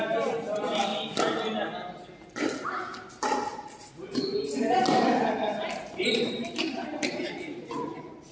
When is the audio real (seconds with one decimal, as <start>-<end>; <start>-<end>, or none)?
0.9-5.9